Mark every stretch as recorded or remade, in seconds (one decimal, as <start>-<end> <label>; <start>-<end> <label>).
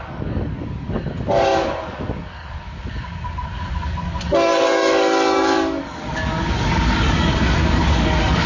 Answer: 0.0-8.5 remade